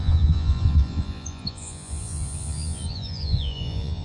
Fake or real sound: fake